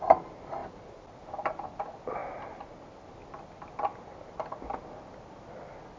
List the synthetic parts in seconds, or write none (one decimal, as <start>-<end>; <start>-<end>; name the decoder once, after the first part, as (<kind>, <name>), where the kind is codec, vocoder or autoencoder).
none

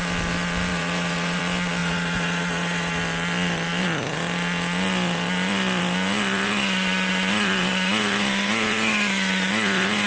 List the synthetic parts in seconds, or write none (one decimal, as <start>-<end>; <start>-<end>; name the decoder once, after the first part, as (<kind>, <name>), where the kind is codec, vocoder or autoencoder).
0.7-1.4 (vocoder, Vocos); 1.8-3.0

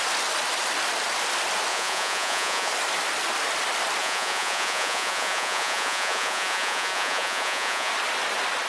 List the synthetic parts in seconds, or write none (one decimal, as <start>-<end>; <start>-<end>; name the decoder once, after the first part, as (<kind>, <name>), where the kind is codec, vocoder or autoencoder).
1.7-2.7 (vocoder, Vocos); 4.0-7.9

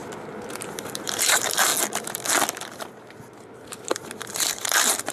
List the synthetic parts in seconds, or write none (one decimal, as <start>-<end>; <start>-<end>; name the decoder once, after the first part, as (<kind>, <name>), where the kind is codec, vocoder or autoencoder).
0.9-1.7 (vocoder, BigVGAN v2); 4.2-5.1

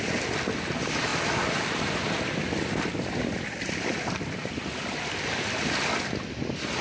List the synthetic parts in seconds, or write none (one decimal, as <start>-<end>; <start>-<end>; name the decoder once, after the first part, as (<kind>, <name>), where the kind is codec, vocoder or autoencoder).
none

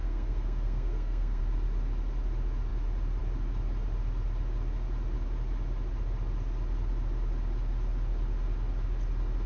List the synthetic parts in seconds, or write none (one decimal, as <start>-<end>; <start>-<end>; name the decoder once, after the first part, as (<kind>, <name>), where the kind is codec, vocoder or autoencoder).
0.0-1.4 (codec, SNAC)

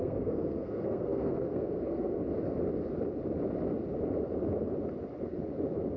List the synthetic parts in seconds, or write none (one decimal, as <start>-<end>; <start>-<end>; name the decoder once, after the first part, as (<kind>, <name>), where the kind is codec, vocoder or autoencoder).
0.0-2.2 (codec, SNAC)

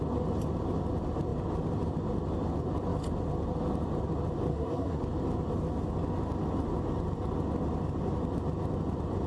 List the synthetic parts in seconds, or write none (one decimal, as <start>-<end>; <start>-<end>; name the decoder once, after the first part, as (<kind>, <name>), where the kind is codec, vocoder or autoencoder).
4.5-5.0 (codec, SNAC)